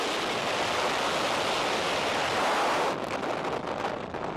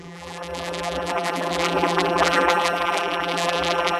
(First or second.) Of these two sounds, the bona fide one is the first